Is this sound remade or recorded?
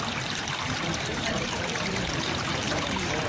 remade